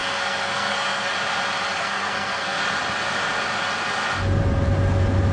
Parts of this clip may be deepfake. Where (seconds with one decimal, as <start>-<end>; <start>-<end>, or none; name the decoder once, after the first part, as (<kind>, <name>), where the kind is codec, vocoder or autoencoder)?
0.0-1.1 (codec, SNAC); 1.8-2.6